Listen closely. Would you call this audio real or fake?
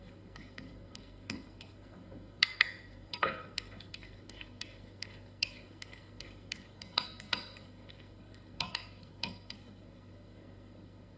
fake